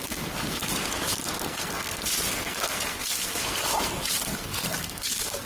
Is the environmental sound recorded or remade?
remade